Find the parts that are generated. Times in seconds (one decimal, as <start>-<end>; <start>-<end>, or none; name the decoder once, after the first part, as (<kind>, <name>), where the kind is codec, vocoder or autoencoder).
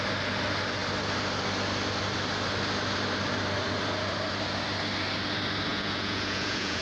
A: 5.7-6.8 (vocoder, Vocos)